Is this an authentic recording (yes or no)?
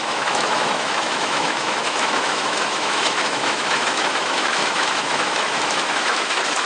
no